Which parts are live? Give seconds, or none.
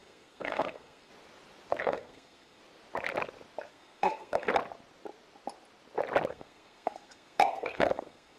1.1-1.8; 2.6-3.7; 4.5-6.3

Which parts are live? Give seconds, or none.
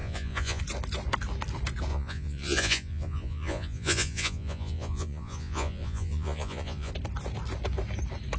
0.6-1.9; 6.9-8.4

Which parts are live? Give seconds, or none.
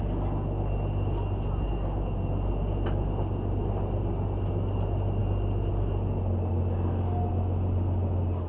0.0-8.5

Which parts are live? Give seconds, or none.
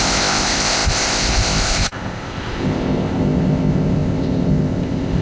none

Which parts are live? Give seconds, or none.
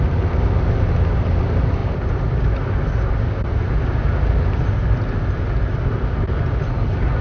0.0-7.2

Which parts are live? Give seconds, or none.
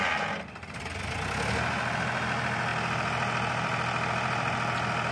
0.0-5.1